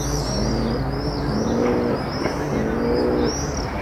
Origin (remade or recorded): recorded